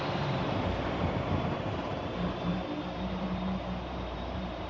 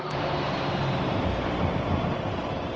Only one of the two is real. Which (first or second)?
second